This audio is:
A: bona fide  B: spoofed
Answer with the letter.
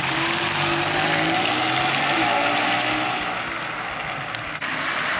A